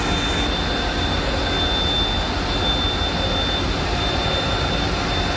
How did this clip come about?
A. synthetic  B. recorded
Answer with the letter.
B